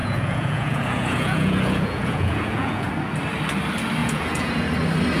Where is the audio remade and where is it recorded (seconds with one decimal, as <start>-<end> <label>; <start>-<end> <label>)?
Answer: 0.0-2.9 remade; 2.9-4.0 recorded; 4.0-4.5 remade; 4.5-5.2 recorded